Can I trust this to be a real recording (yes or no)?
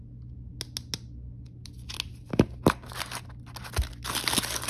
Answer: yes